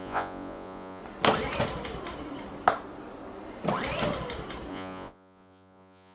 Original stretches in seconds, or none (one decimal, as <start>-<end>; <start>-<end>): 1.0-4.7